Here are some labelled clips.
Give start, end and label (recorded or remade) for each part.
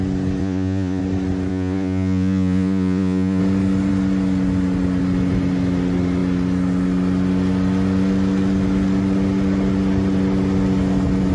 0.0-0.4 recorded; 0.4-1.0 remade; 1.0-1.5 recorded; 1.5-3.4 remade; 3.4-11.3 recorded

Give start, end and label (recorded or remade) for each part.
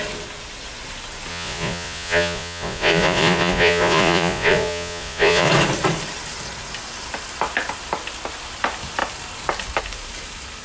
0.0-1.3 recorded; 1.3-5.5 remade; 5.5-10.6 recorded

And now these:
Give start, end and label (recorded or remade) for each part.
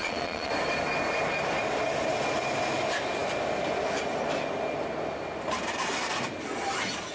0.0-0.5 remade; 0.5-7.1 recorded